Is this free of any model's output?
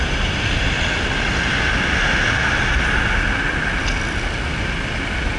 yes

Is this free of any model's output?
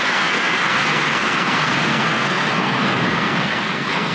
no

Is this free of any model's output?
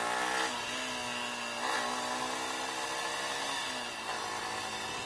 yes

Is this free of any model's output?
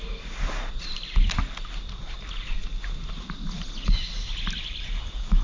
yes